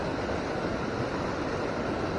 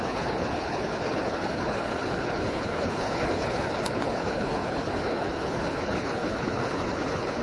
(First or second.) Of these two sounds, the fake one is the second